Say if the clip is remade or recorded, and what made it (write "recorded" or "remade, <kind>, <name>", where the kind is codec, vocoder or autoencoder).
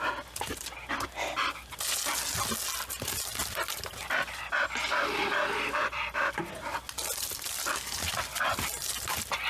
recorded